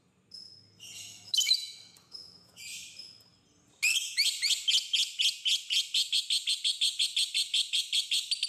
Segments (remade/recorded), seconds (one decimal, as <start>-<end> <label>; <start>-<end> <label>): 0.0-1.1 recorded; 1.1-2.6 remade; 2.6-8.5 recorded